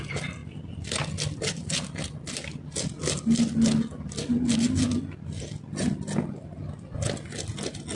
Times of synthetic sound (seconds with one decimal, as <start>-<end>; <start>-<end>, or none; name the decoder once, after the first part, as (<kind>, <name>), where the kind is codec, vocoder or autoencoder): none